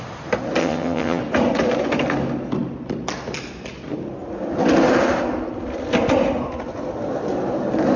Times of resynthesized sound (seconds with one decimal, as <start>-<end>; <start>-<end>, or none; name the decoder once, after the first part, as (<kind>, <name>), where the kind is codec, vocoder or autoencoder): 0.6-1.2 (vocoder, HiFi-GAN)